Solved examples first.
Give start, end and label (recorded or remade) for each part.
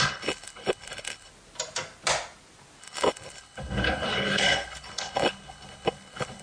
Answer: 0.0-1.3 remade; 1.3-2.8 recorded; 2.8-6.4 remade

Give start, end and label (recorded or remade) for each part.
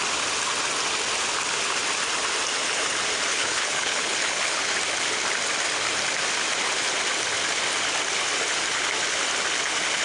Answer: 0.0-3.3 recorded; 3.3-4.7 remade; 4.7-10.0 recorded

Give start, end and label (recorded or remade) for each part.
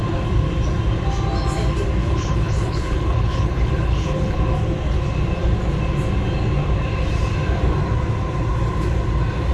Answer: 0.0-2.0 recorded; 2.0-4.4 remade; 4.4-9.5 recorded